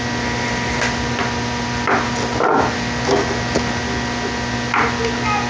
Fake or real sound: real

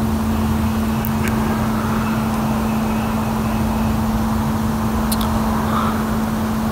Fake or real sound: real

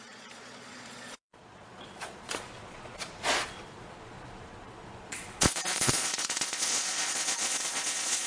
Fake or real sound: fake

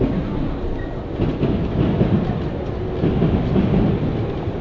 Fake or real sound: real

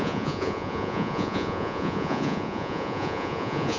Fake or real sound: fake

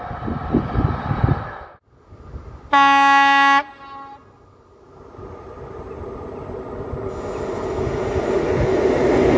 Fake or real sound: real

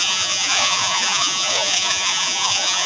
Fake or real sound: fake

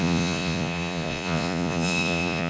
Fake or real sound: fake